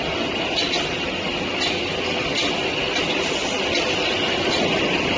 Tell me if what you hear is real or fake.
real